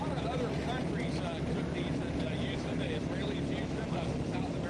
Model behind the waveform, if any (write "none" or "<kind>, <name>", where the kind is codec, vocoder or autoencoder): none